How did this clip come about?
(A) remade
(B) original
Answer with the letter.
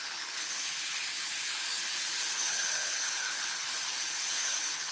A